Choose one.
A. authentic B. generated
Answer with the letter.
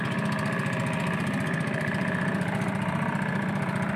B